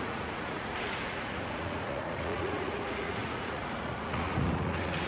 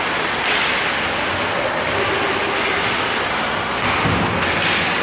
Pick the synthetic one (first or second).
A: first